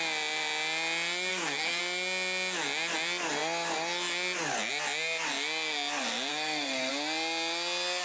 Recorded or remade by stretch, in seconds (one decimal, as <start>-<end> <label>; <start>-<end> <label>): 0.0-1.3 recorded; 1.3-1.8 remade; 1.8-6.3 recorded; 6.3-6.9 remade; 6.9-8.0 recorded